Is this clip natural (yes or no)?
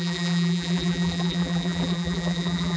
no